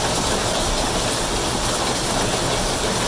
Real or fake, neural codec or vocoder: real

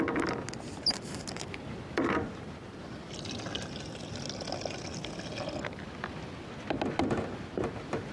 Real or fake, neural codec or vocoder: real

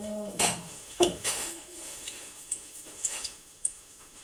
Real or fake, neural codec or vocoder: fake, autoencoder, DAC-VAE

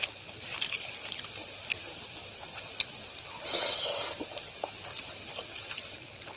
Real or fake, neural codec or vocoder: real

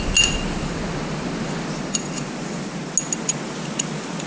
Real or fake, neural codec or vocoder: real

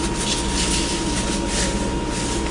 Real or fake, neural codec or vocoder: real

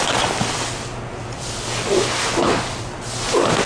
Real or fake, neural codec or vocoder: real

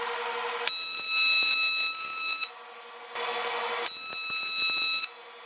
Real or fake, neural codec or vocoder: real